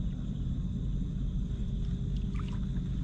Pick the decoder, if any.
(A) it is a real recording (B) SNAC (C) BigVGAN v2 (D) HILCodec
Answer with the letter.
A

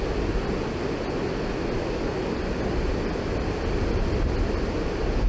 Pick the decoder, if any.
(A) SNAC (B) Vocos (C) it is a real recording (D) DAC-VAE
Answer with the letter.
C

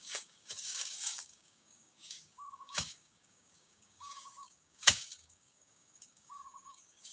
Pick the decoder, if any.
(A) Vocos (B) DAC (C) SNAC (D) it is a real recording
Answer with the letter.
B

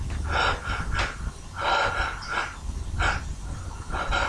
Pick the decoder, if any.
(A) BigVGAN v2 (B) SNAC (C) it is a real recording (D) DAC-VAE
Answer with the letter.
C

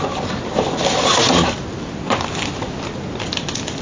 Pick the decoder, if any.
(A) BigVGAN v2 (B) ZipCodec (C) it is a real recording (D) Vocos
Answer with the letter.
C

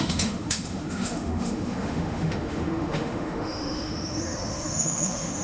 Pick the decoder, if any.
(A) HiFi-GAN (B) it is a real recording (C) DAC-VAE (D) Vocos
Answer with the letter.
C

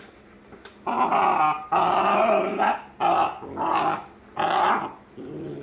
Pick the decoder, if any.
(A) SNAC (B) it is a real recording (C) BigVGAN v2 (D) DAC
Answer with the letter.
B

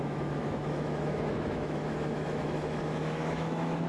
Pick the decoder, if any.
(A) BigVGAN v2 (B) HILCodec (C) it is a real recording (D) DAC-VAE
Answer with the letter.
D